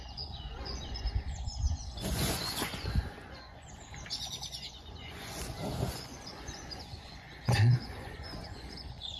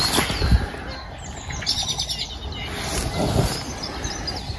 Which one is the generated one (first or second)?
first